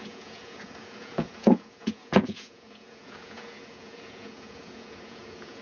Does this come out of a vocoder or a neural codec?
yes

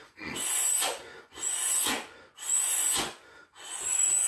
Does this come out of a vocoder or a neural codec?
yes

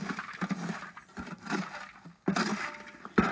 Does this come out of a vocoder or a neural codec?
no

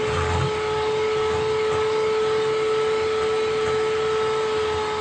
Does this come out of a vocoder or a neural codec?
no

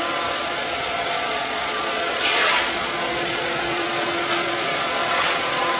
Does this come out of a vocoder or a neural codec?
yes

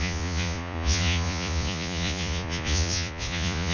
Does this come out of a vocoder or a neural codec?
yes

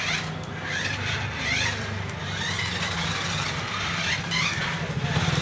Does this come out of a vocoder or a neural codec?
no